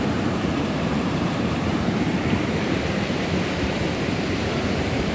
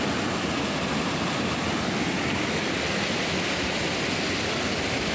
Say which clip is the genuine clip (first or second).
second